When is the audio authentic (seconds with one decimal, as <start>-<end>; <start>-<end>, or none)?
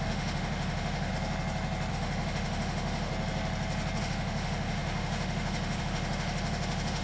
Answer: 1.1-1.9; 3.1-4.0